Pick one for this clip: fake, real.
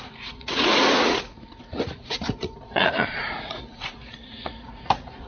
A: fake